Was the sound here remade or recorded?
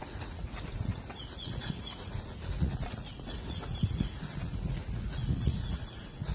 remade